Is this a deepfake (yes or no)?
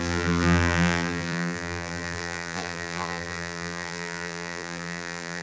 yes